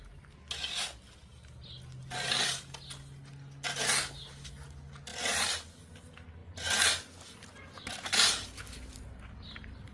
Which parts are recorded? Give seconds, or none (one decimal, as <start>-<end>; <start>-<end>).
0.0-9.9